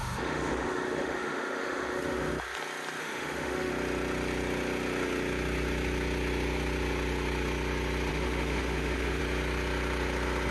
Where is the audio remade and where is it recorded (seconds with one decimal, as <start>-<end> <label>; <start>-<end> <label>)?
0.0-2.3 remade; 2.3-3.0 recorded; 3.0-3.7 remade; 3.7-8.1 recorded; 8.1-9.2 remade; 9.2-10.5 recorded